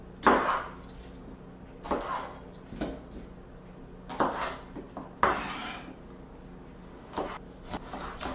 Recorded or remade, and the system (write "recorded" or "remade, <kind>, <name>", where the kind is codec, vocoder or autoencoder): recorded